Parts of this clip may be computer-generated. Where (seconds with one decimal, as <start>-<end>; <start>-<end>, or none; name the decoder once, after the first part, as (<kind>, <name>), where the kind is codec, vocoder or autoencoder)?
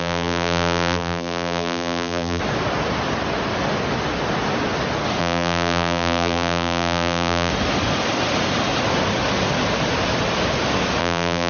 0.0-2.4 (vocoder, BigVGAN v2); 5.2-7.5; 11.0-11.5